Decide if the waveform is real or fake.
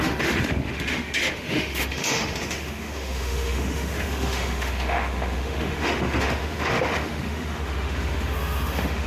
fake